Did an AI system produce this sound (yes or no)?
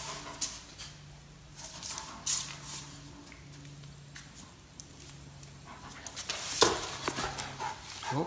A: no